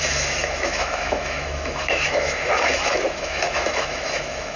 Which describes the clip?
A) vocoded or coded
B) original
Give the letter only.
A